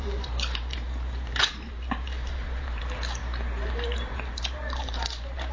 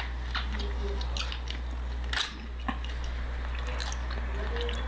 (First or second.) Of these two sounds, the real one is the second